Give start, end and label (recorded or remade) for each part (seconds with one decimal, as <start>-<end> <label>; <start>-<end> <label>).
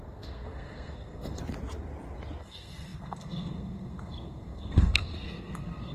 0.0-1.4 remade; 1.4-2.4 recorded; 2.4-5.9 remade